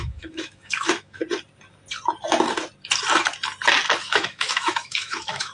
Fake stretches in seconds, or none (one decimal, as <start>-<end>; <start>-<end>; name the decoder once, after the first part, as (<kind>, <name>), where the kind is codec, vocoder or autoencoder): 0.0-1.2 (autoencoder, DAC-VAE); 4.0-5.5